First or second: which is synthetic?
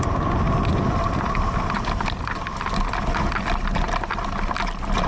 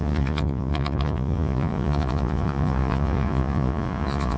second